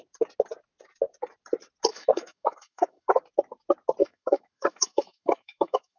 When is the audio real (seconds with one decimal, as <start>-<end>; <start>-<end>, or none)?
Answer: 0.0-1.9; 3.1-4.0